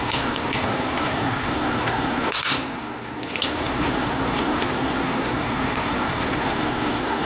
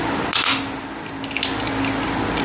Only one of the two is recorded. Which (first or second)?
second